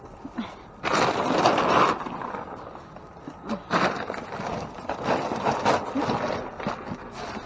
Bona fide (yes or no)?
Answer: yes